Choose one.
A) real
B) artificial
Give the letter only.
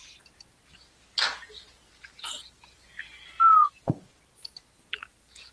A